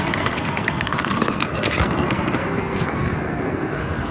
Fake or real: fake